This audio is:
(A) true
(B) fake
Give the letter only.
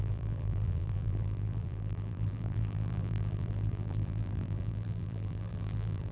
B